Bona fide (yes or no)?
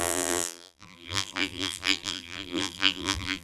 no